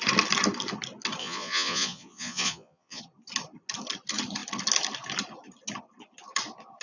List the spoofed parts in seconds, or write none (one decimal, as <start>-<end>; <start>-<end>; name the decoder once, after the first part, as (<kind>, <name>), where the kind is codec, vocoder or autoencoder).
1.2-3.0 (vocoder, Vocos)